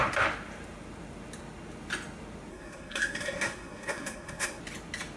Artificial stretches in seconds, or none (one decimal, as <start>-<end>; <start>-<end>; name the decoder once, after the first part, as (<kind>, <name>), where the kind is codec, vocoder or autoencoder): 2.5-4.6 (codec, SNAC)